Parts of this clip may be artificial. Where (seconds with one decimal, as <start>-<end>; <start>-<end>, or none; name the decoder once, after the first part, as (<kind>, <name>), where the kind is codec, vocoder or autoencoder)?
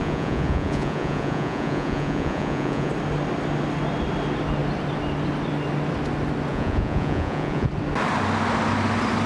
0.0-2.9 (vocoder, Vocos); 6.5-7.7